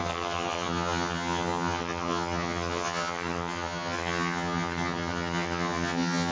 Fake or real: fake